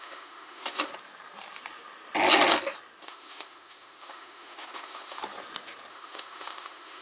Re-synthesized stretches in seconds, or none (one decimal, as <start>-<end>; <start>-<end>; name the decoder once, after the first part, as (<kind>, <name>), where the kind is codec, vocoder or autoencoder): 0.0-0.9 (autoencoder, DAC-VAE); 3.0-5.2; 5.9-7.0